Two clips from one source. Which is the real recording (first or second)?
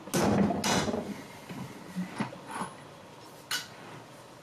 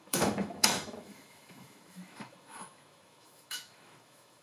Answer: first